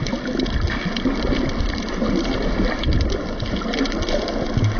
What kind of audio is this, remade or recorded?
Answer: recorded